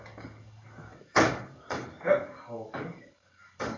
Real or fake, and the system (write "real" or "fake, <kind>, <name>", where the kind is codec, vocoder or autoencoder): fake, codec, DAC